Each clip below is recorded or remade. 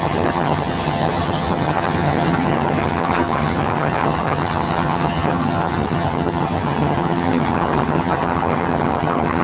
remade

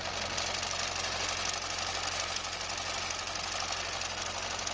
recorded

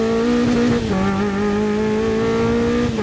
recorded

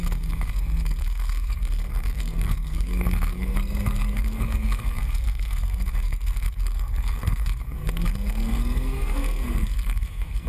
remade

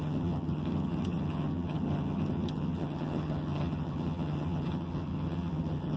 remade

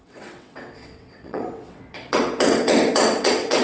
remade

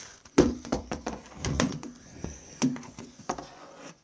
remade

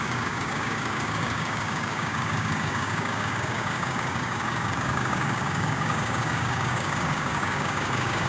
remade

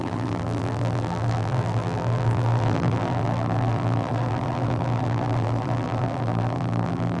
remade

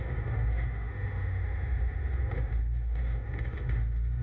remade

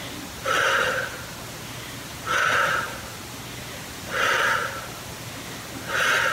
recorded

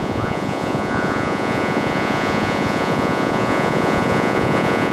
remade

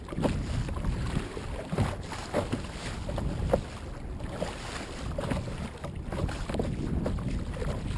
recorded